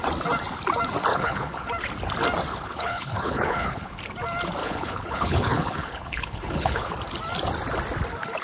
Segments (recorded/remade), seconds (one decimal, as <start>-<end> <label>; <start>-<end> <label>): 0.0-1.1 recorded; 1.1-1.7 remade; 1.7-2.5 recorded; 2.5-4.0 remade; 4.0-4.6 recorded; 4.6-6.9 remade; 6.9-8.4 recorded